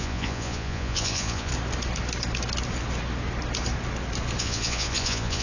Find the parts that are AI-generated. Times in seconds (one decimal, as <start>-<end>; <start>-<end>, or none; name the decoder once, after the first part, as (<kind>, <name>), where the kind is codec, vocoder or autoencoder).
0.0-1.5 (vocoder, Vocos); 4.4-5.4